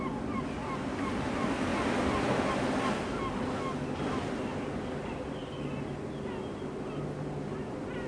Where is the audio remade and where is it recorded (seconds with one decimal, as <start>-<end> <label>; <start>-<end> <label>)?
0.0-8.1 recorded